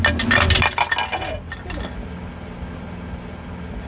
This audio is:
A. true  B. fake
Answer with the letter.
A